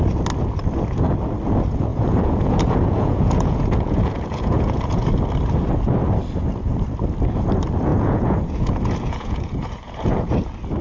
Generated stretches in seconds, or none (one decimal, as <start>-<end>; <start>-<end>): 1.9-5.1; 7.9-10.3